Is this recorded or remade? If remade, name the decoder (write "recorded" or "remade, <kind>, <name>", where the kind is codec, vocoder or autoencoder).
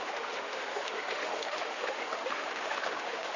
remade, autoencoder, DAC-VAE